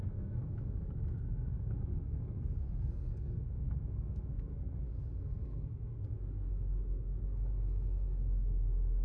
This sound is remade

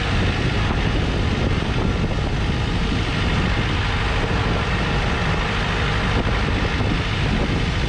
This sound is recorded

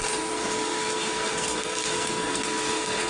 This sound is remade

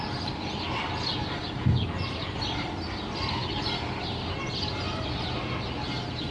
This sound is recorded